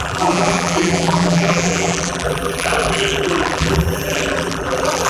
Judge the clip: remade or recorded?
remade